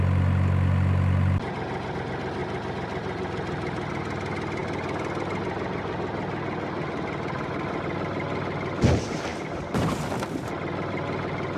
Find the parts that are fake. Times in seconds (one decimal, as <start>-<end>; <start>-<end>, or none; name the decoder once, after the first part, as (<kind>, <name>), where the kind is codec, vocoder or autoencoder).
none